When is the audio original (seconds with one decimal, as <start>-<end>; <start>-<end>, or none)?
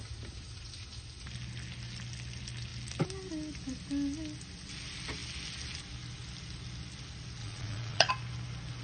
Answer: 0.0-7.4; 8.1-8.8